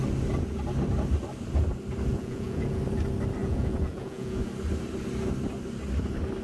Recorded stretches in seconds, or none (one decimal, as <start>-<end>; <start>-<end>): 0.0-2.1; 2.8-3.4; 4.4-6.4